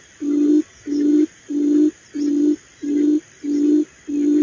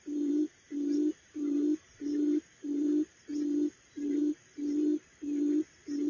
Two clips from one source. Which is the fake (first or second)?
second